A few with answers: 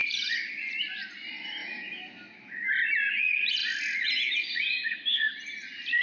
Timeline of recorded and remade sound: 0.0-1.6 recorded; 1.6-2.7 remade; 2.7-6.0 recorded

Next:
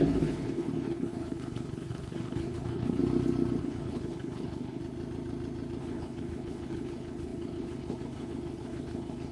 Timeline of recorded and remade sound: 0.0-3.0 remade; 3.0-3.6 recorded; 3.6-4.8 remade; 4.8-5.8 recorded; 5.8-9.3 remade

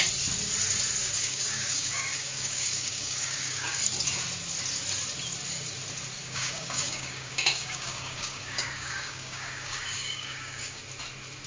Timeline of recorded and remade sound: 0.0-1.0 recorded; 1.0-3.8 remade; 3.8-6.2 recorded; 6.2-10.8 remade; 10.8-11.5 recorded